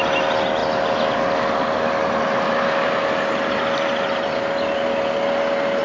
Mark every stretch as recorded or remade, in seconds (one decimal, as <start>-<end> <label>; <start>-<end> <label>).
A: 0.0-5.8 recorded